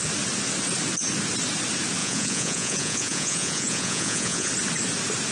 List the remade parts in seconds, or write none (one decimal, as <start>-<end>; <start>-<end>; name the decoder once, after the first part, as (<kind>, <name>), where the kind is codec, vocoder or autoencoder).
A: 2.0-4.5 (vocoder, Vocos)